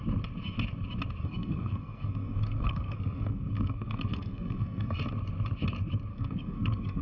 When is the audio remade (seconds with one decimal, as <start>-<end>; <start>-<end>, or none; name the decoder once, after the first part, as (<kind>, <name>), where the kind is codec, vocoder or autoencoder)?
1.2-5.0 (codec, SNAC); 6.1-7.0